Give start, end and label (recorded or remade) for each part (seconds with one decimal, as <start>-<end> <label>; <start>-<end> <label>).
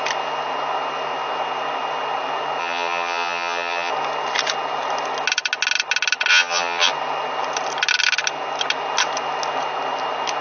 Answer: 0.0-2.6 recorded; 2.6-3.9 remade; 3.9-6.3 recorded; 6.3-6.9 remade; 6.9-10.4 recorded